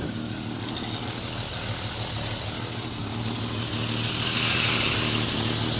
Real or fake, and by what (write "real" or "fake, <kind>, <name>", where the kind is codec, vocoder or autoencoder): real